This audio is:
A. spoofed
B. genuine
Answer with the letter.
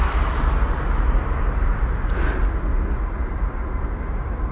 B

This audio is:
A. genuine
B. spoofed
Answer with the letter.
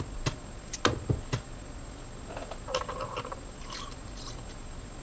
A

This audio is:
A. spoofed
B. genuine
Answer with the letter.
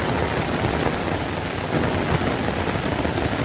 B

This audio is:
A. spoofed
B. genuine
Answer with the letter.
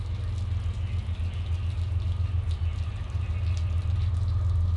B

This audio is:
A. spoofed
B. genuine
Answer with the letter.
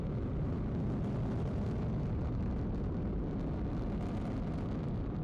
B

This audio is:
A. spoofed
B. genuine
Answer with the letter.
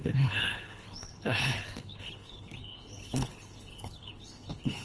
A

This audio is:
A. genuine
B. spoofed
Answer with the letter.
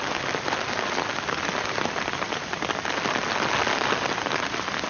A